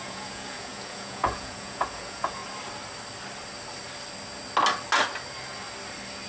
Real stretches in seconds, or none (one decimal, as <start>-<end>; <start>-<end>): 2.4-6.3